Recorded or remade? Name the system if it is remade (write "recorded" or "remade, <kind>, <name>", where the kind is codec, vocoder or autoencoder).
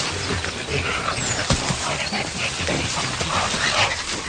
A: recorded